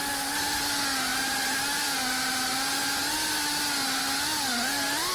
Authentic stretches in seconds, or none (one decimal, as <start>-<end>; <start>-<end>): 0.0-5.1